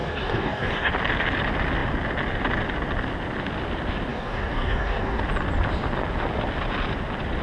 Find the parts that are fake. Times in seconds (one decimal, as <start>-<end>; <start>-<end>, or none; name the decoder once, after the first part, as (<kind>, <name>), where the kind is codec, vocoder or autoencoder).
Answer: 0.0-0.9 (codec, DAC); 4.1-5.2